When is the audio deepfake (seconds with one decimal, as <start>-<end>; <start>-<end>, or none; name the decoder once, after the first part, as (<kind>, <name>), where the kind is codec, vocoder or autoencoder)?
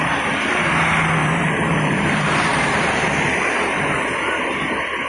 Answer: 1.2-3.8 (vocoder, BigVGAN v2)